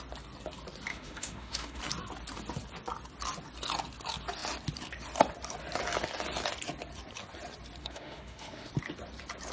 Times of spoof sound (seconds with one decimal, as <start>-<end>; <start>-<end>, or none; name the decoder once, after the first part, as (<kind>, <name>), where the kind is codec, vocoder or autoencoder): 0.9-1.8 (autoencoder, DAC-VAE); 7.8-8.7